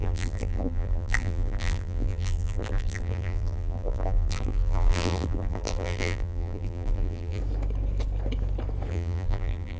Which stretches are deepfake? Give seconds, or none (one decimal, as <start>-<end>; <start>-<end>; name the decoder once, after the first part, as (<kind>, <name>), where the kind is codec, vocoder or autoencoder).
0.0-7.4 (vocoder, BigVGAN v2); 8.9-9.8